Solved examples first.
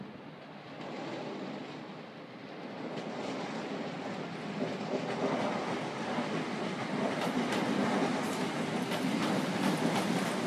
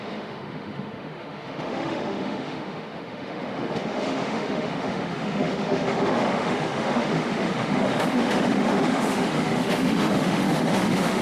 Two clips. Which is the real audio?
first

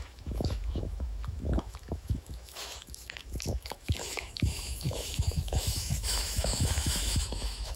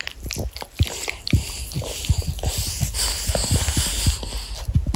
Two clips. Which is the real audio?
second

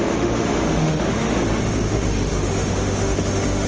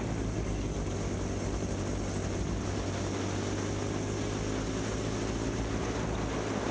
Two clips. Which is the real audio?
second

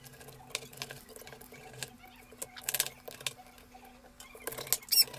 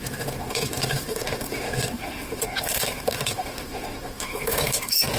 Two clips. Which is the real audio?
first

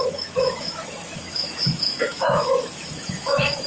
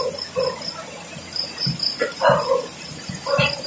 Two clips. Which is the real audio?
second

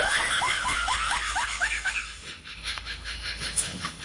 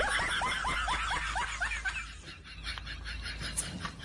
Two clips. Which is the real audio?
second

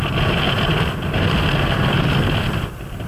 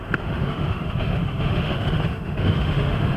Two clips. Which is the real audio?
first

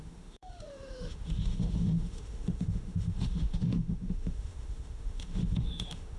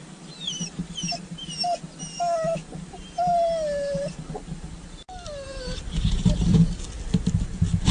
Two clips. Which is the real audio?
second